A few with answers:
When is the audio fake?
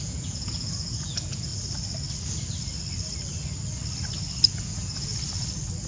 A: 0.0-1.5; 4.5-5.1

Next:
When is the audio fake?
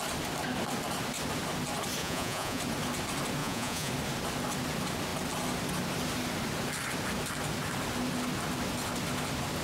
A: 2.0-2.6; 3.4-3.9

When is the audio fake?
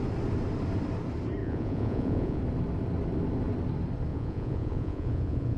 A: 1.4-2.4; 4.1-5.6